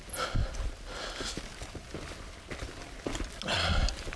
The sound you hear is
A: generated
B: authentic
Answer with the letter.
B